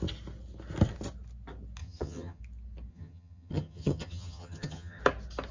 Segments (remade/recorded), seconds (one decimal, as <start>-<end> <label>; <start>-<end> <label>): 0.0-1.8 recorded; 1.8-2.4 remade; 2.4-2.9 recorded; 2.9-5.0 remade; 5.0-5.5 recorded